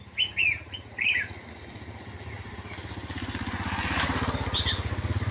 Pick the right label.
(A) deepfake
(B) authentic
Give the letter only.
B